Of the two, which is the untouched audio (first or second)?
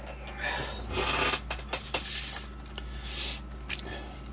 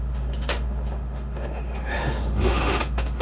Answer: first